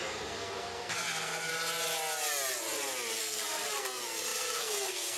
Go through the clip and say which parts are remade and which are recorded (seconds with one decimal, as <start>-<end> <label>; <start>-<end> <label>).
0.0-1.5 remade; 1.5-3.2 recorded; 3.2-5.2 remade